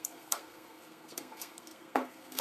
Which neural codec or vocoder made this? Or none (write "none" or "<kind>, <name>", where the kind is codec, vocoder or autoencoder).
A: codec, SNAC